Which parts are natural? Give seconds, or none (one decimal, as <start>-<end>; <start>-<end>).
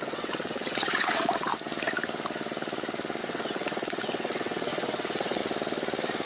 1.5-3.2; 5.4-6.3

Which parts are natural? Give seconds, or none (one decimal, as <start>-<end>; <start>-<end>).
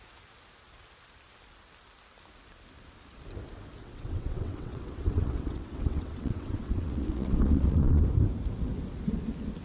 0.0-3.8; 8.0-9.6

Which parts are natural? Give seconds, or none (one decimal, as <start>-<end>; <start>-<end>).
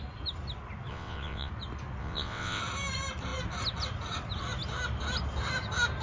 0.0-0.9; 1.5-2.0; 2.6-6.0